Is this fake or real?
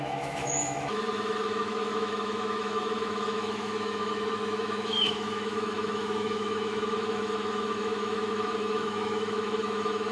fake